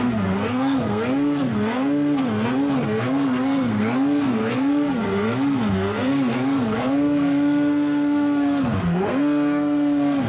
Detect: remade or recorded remade